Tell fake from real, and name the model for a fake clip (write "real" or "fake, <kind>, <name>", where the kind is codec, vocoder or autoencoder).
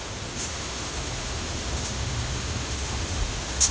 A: fake, autoencoder, DAC-VAE